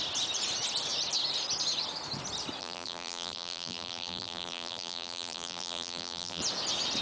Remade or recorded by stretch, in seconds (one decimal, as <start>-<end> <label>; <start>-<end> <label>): 0.0-2.6 recorded; 2.6-6.4 remade; 6.4-7.0 recorded